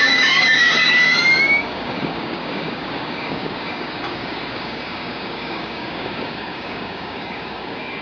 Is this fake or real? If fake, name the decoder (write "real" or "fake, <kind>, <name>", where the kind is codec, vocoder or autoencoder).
fake, codec, DAC